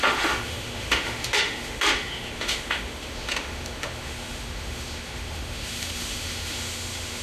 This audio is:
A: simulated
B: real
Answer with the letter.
A